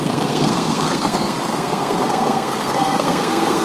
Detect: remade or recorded remade